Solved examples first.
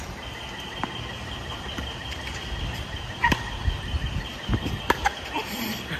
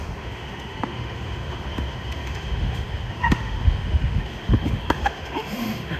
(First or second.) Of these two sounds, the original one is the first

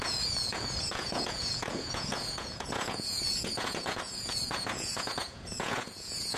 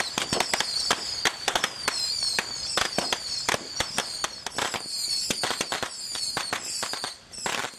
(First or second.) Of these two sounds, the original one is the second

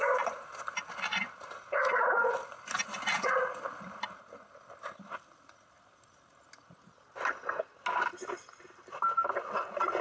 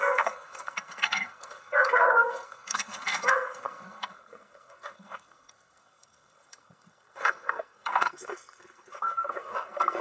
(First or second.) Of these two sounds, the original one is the first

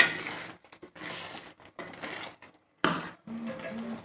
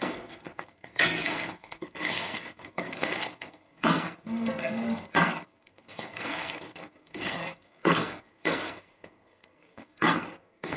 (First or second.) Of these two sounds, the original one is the first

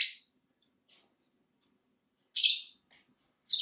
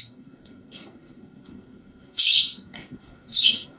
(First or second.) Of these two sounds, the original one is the first